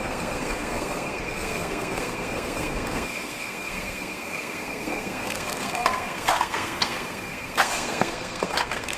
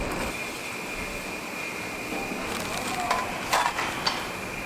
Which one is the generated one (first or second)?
first